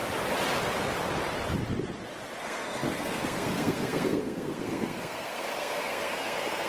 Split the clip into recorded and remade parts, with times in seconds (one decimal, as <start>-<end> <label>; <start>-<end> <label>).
0.0-2.4 recorded; 2.4-6.7 remade